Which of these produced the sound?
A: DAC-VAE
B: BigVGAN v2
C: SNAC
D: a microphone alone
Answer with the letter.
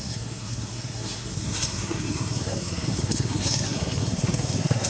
C